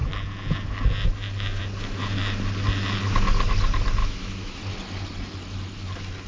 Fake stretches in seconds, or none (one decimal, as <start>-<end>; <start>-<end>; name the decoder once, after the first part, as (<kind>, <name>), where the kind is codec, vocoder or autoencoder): 4.0-4.6 (autoencoder, DAC-VAE)